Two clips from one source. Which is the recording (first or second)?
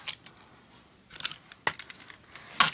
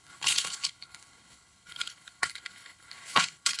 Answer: first